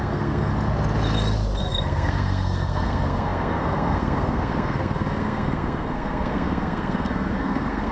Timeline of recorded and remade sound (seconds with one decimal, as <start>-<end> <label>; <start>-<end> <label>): 0.0-0.5 remade; 0.5-1.6 recorded; 1.6-7.9 remade

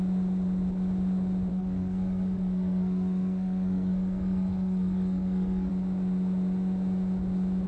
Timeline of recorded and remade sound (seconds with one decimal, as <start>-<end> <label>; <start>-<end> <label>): 0.0-1.5 recorded; 1.5-5.7 remade; 5.7-7.7 recorded